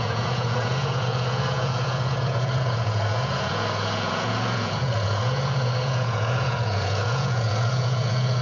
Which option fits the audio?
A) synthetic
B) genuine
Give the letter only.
A